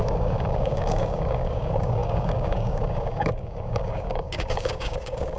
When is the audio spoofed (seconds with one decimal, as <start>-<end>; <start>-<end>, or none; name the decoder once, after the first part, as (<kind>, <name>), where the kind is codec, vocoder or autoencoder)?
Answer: 0.0-5.4 (codec, DAC)